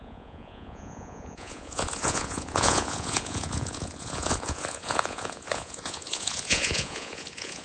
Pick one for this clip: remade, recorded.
remade